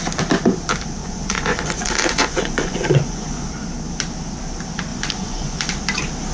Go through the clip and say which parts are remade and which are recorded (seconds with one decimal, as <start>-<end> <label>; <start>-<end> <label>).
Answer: 0.0-1.0 recorded; 1.0-3.5 remade; 3.5-4.9 recorded; 4.9-5.7 remade; 5.7-6.3 recorded